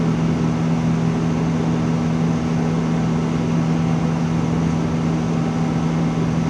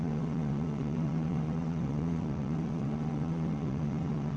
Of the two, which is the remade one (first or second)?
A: second